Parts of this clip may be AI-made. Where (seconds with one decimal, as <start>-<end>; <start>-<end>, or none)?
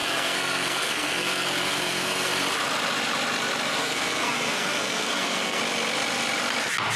0.0-2.3; 3.8-5.6